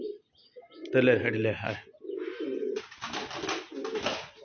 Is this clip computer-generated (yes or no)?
no